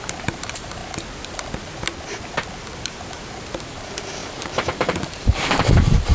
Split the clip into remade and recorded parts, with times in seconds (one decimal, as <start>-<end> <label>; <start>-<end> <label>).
0.0-0.8 remade; 0.8-3.2 recorded; 3.2-6.1 remade